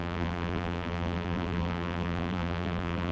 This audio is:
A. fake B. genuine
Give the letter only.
A